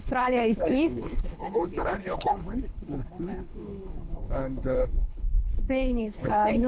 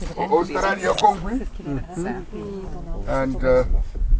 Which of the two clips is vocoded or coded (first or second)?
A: first